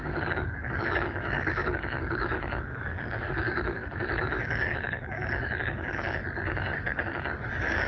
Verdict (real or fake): fake